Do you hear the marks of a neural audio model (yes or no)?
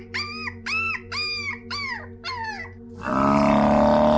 no